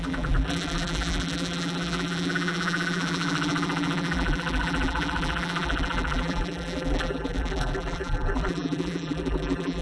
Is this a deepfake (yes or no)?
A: yes